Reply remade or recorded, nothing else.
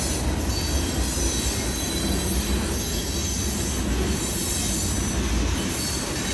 recorded